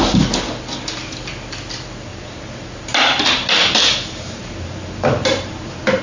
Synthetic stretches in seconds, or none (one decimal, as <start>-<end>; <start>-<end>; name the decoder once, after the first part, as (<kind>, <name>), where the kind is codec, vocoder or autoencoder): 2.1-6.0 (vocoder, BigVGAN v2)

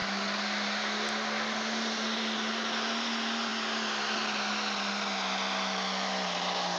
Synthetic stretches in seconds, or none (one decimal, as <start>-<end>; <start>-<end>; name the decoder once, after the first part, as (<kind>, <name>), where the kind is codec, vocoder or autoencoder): none

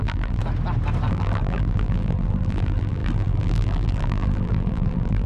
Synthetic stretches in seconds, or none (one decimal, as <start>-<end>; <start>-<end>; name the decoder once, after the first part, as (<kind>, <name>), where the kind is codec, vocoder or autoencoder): 0.0-0.4 (vocoder, BigVGAN v2); 1.1-5.3

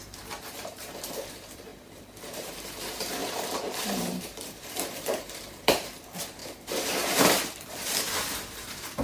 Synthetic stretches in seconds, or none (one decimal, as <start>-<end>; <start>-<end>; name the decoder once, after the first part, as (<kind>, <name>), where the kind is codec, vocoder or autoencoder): 0.0-9.0 (vocoder, BigVGAN v2)

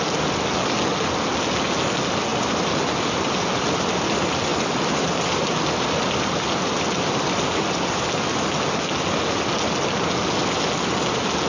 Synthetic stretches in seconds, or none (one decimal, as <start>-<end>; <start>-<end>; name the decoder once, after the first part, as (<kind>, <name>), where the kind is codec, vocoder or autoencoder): 2.3-3.0 (vocoder, BigVGAN v2); 4.5-8.0

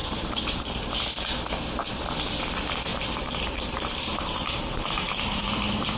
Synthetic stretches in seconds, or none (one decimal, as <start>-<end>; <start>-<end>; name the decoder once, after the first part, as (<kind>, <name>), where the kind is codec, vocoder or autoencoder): 0.0-1.0 (vocoder, BigVGAN v2); 2.9-6.0

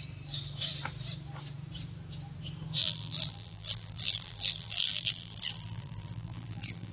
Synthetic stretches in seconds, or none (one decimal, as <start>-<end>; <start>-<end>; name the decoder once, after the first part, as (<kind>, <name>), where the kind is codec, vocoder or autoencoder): 2.8-6.9 (vocoder, BigVGAN v2)